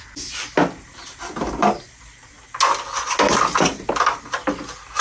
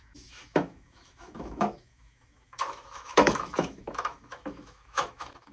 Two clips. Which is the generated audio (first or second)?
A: second